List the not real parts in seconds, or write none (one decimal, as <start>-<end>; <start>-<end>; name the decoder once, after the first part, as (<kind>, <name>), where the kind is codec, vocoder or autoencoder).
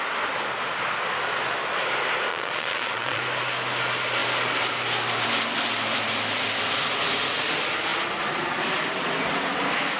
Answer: 2.3-3.2 (vocoder, Vocos)